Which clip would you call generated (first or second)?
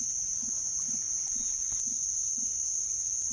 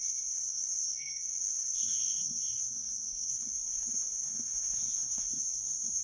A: second